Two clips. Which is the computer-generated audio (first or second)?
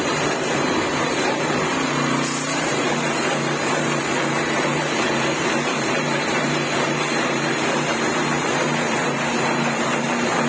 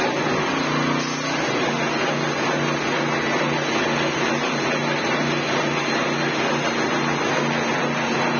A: first